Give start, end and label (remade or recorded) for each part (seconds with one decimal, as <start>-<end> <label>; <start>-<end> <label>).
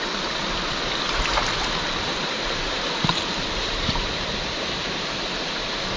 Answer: 0.0-2.1 recorded; 2.1-4.9 remade; 4.9-6.0 recorded